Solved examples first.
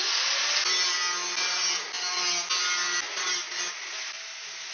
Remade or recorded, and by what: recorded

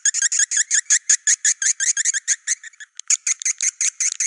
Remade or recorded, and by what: recorded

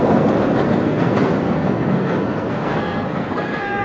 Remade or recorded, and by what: remade, codec, SNAC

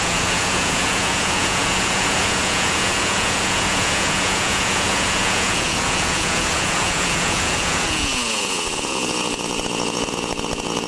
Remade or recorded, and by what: remade, vocoder, Vocos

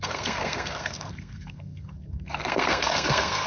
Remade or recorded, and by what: remade, codec, SNAC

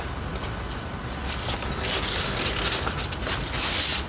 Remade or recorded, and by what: recorded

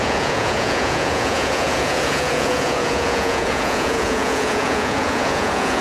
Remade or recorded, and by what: remade, vocoder, Vocos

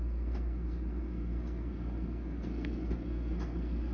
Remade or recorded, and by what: remade, codec, SNAC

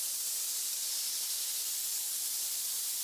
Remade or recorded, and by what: remade, vocoder, BigVGAN v2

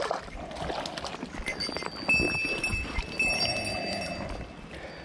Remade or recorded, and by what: recorded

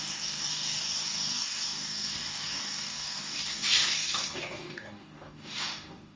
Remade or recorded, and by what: remade, codec, DAC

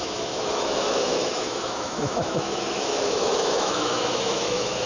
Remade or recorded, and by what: remade, autoencoder, DAC-VAE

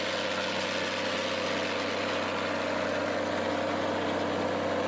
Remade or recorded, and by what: recorded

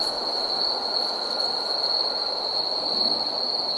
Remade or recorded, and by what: recorded